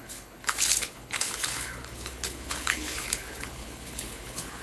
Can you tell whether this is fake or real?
fake